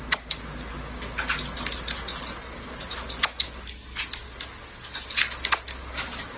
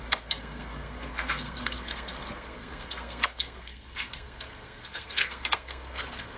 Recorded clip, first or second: first